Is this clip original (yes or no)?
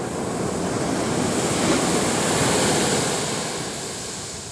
yes